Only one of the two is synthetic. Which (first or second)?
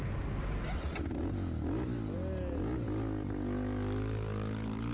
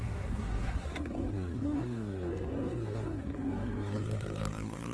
second